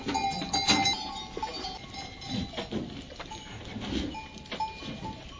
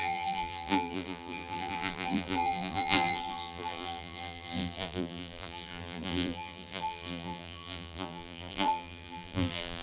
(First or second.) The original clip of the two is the first